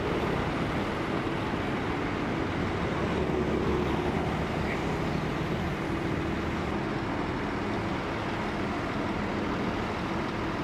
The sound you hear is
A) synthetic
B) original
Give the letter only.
B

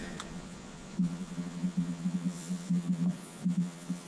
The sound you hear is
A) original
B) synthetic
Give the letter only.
B